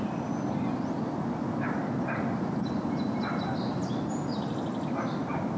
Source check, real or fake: real